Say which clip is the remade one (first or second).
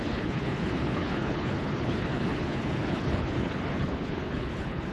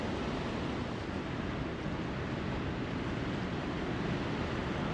first